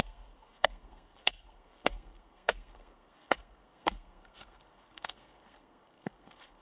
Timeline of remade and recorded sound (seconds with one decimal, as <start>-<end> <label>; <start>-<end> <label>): 0.0-6.6 remade